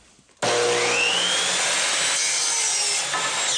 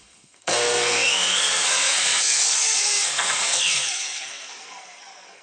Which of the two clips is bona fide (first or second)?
first